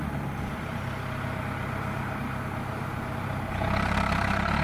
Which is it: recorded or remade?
recorded